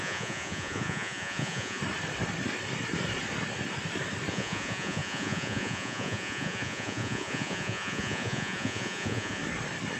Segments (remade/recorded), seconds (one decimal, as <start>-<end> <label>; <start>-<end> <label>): 0.0-1.8 remade; 1.8-4.3 recorded; 4.3-9.4 remade; 9.4-10.0 recorded